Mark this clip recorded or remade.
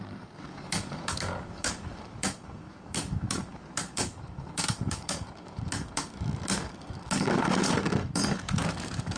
remade